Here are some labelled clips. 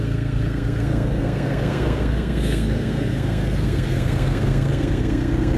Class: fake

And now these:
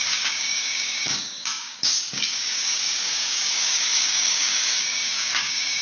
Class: fake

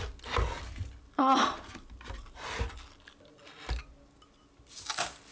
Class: real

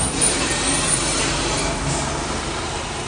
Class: fake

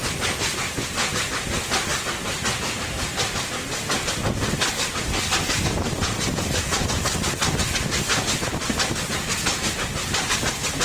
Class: real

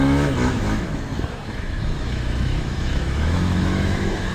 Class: fake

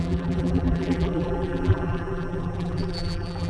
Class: fake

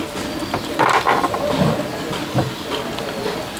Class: real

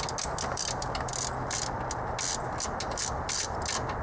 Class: real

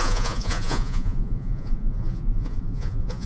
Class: fake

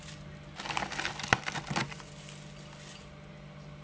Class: real